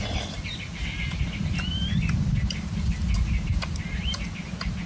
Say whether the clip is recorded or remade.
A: recorded